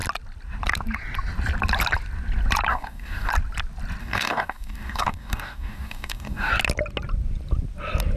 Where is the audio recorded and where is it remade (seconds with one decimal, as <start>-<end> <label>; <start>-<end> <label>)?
0.0-2.7 recorded; 2.7-3.3 remade; 3.3-4.0 recorded; 4.0-6.5 remade; 6.5-8.2 recorded